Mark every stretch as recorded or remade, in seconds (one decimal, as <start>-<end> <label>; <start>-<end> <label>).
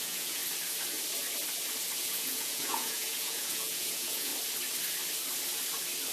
0.0-0.4 remade; 0.4-2.0 recorded; 2.0-4.3 remade; 4.3-6.1 recorded